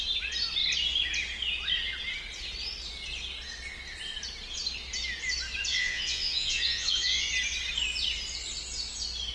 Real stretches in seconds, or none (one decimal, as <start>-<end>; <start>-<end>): 0.0-5.7; 7.3-9.3